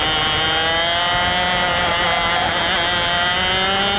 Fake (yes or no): no